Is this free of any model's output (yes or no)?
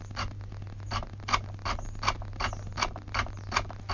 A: yes